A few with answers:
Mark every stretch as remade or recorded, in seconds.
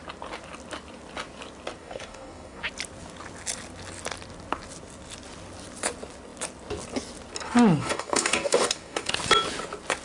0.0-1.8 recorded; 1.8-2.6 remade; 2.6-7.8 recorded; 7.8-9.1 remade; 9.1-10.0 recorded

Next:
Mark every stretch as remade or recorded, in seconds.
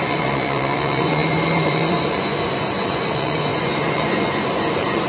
0.0-5.1 remade